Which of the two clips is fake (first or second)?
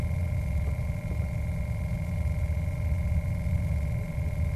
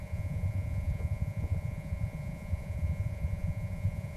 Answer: second